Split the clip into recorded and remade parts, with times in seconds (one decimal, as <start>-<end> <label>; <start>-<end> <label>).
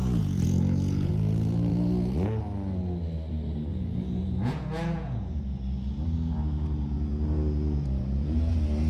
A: 0.0-1.1 remade; 1.1-3.7 recorded; 3.7-8.5 remade; 8.5-8.9 recorded